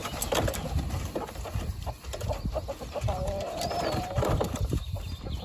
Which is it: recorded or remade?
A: recorded